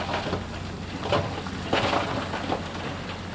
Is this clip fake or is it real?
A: real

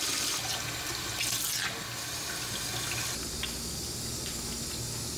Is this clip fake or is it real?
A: real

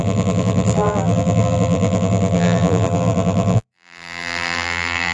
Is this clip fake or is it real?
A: fake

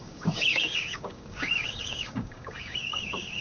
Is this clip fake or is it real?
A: fake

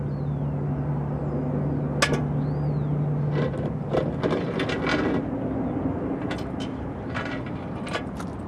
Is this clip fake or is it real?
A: real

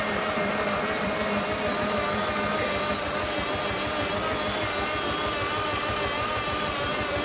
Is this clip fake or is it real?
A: real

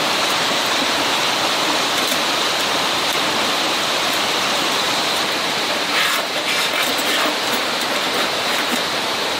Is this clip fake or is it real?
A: fake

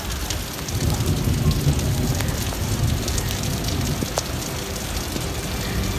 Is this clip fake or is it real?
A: real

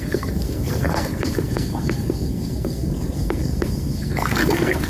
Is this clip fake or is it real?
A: fake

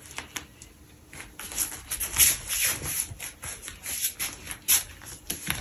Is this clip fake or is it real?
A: real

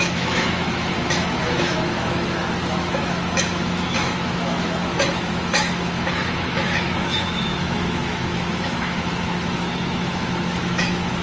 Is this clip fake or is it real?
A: fake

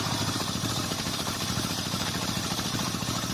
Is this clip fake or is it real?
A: fake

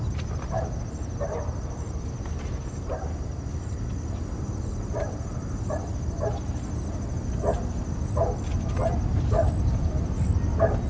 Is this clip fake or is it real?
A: real